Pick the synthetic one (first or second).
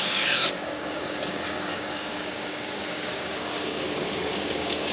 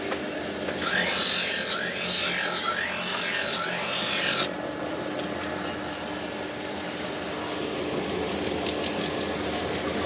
first